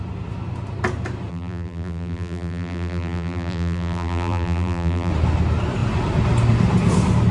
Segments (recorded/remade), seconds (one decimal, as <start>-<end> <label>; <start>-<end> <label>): 0.0-1.3 recorded; 1.3-5.1 remade; 5.1-7.3 recorded